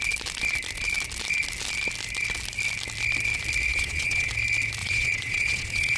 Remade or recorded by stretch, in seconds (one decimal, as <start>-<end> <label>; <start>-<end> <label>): 0.0-3.7 recorded; 3.7-4.3 remade; 4.3-4.8 recorded; 4.8-6.0 remade